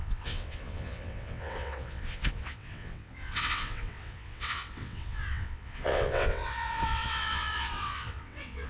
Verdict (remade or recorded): remade